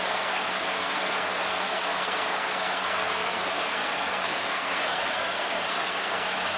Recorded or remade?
remade